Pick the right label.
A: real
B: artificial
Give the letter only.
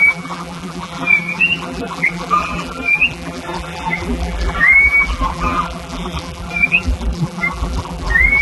B